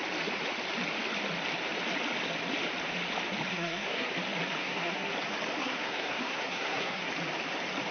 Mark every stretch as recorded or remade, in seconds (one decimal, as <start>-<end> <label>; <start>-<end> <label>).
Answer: 0.0-3.5 recorded; 3.5-4.1 remade; 4.1-4.6 recorded; 4.6-5.1 remade; 5.1-5.6 recorded; 5.6-7.1 remade; 7.1-7.9 recorded